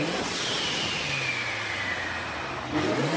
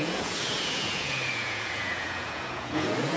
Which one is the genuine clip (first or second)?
first